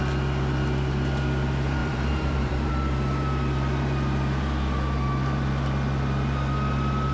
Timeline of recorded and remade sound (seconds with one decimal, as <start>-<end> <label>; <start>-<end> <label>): 0.0-1.8 recorded; 1.8-2.7 remade; 2.7-7.1 recorded